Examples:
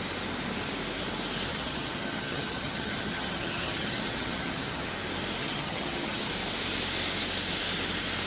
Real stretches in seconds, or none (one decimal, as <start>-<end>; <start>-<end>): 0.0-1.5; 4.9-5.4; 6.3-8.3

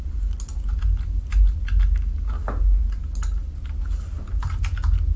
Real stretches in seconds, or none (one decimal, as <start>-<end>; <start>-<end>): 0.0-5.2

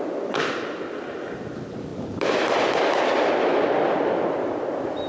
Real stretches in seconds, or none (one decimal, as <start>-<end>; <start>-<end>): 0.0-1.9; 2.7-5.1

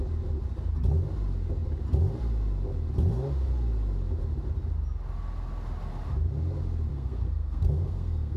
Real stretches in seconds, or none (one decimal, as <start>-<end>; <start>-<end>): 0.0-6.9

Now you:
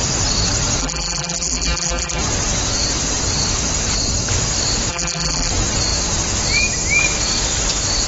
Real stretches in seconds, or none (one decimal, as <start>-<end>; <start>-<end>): 0.0-0.8; 2.2-4.9; 5.5-8.1